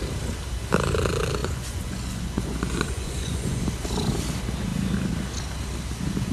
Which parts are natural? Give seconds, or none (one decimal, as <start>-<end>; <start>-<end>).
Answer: 0.0-1.4; 3.6-6.3